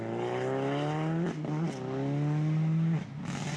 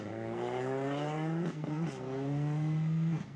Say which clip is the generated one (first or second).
second